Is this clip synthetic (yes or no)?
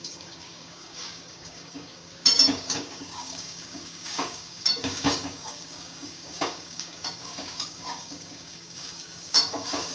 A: yes